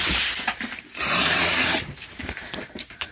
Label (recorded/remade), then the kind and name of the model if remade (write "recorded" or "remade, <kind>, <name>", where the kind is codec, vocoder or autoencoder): remade, vocoder, BigVGAN v2